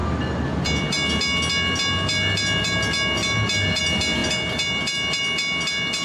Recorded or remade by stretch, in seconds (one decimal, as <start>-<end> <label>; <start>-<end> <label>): 0.0-6.0 recorded